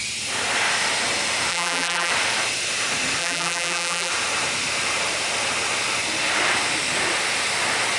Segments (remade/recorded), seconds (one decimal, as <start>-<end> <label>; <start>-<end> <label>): 0.0-1.5 recorded; 1.5-2.1 remade; 2.1-3.2 recorded; 3.2-4.1 remade; 4.1-8.0 recorded